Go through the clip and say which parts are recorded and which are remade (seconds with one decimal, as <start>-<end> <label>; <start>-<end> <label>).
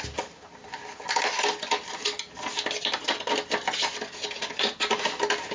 0.0-4.4 recorded; 4.4-5.1 remade; 5.1-5.5 recorded